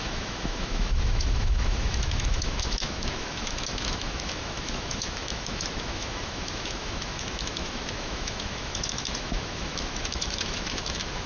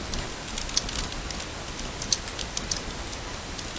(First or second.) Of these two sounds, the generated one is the first